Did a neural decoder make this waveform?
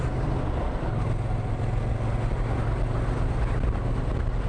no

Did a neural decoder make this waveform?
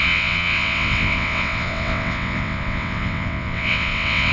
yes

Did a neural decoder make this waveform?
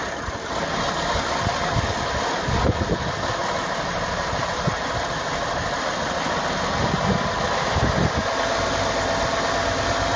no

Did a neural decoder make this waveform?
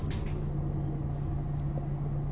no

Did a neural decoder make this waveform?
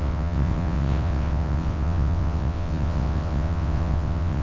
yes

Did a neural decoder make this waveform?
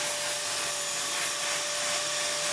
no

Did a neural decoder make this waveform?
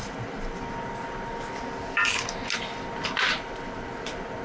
no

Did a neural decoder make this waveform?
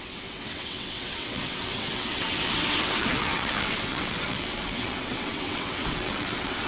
yes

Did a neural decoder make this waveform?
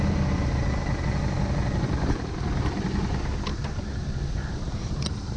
no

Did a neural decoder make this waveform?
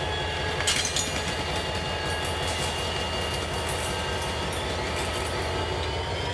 no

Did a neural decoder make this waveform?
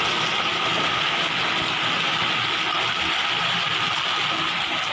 no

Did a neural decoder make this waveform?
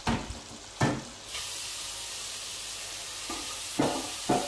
no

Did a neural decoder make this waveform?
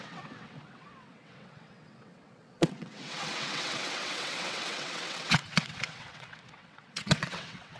yes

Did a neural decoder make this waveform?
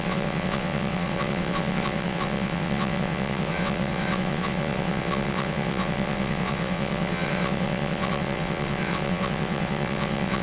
yes